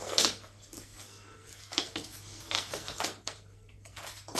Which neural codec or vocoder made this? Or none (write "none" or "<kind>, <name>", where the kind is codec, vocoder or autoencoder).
codec, SNAC